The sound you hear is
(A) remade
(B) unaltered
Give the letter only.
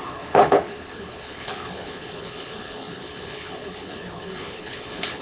A